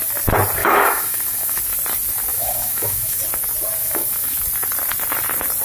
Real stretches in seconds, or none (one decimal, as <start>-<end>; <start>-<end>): 0.0-0.6; 1.6-2.3; 3.2-3.8; 4.4-5.6